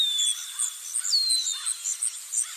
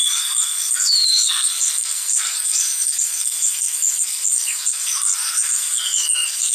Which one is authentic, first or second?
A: first